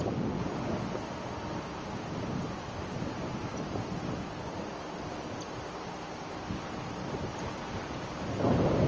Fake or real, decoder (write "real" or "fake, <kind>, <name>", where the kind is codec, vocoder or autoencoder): real